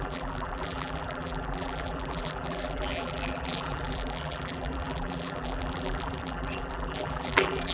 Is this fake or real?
fake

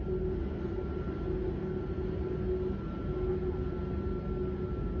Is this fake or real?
real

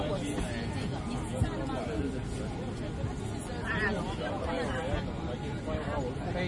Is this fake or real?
real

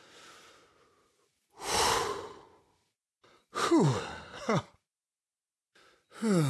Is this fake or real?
real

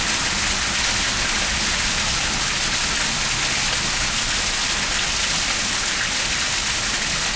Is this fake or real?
fake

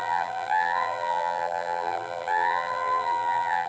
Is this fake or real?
fake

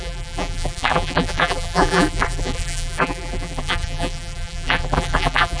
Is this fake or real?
fake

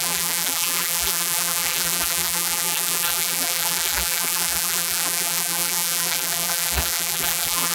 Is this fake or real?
fake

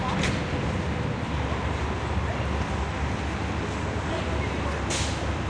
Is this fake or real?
real